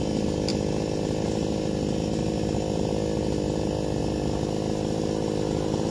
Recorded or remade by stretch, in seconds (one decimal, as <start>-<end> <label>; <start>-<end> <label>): 0.0-5.9 recorded